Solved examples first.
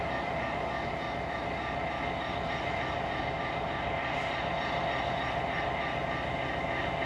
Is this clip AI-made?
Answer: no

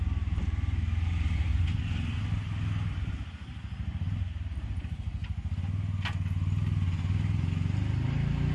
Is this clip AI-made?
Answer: no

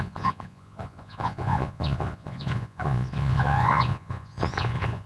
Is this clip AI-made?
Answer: yes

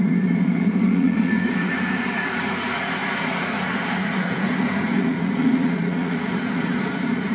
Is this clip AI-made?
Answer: yes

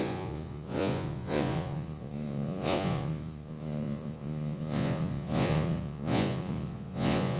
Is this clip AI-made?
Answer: yes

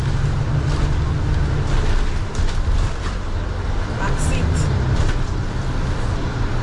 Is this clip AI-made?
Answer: no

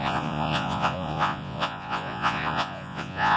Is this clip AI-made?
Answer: yes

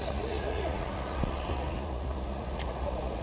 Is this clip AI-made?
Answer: yes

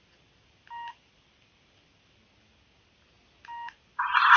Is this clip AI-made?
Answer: no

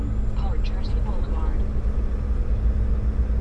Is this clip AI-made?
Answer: no